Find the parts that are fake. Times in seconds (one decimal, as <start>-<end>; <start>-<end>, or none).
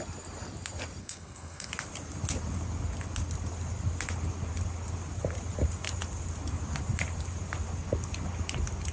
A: 1.0-1.7